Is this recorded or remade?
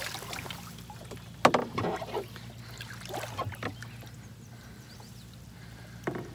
recorded